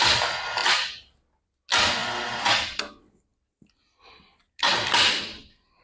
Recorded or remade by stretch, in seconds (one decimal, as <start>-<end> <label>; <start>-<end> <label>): 0.0-5.8 recorded